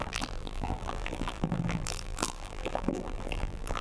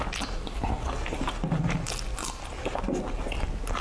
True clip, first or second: second